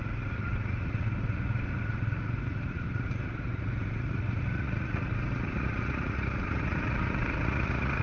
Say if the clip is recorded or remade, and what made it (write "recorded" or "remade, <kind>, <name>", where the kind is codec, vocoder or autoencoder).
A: remade, vocoder, Vocos